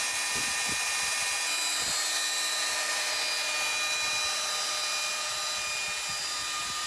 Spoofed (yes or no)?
no